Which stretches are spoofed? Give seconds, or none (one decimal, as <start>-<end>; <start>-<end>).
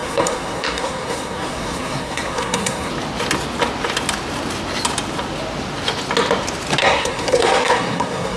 0.0-2.9; 6.8-8.4